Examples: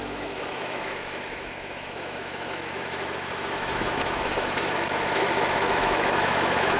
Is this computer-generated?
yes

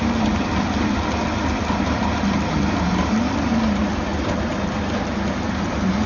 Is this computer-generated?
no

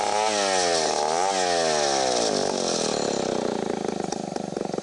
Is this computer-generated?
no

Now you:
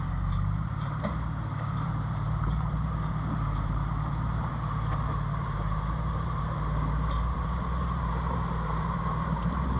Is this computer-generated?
yes